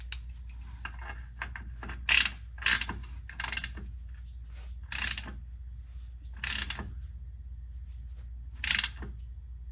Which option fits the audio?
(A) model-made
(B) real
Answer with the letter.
B